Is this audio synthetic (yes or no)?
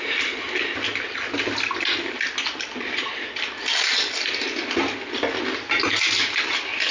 no